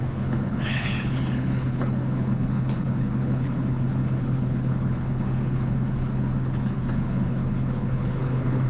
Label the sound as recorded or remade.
remade